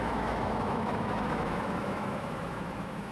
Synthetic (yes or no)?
yes